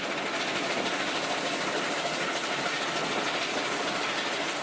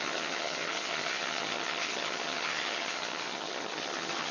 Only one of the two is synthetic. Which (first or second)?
second